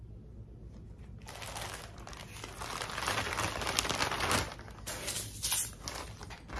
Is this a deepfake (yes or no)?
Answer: no